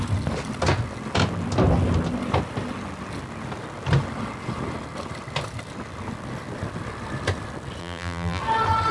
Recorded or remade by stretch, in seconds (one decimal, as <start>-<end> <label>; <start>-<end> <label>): 0.0-7.8 recorded; 7.8-8.4 remade; 8.4-8.9 recorded